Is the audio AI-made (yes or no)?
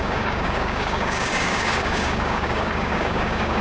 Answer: yes